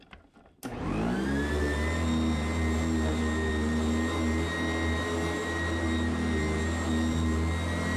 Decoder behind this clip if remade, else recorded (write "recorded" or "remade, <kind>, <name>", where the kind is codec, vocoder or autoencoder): recorded